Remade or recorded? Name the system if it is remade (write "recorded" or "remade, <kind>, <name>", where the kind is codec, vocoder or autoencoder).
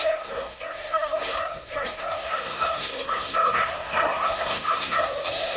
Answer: remade, codec, SNAC